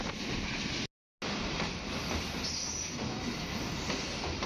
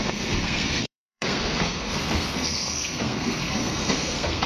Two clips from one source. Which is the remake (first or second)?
second